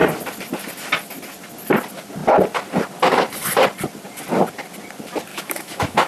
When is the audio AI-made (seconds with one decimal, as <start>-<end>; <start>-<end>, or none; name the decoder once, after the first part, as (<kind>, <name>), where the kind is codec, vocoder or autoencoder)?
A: 5.3-6.1 (autoencoder, DAC-VAE)